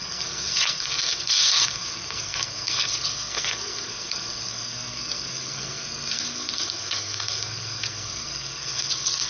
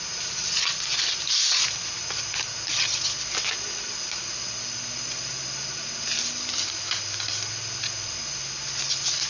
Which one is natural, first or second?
second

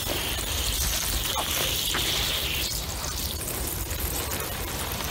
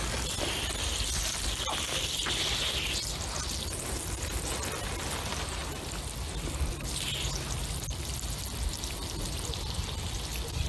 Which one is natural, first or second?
second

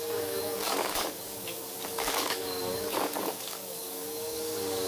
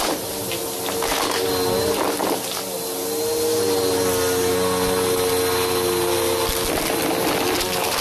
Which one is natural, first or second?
second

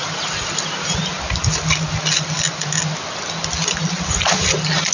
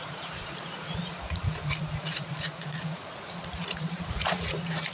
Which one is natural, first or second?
first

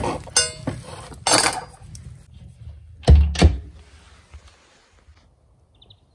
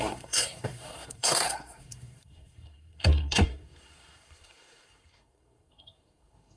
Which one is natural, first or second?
first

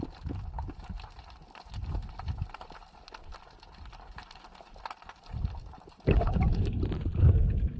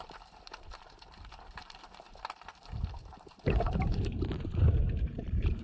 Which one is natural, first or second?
first